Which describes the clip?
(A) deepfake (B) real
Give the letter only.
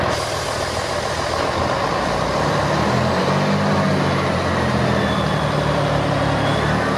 B